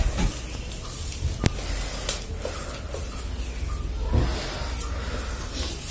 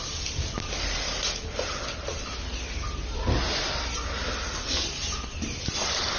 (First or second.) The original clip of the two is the first